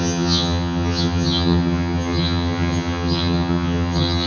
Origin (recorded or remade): remade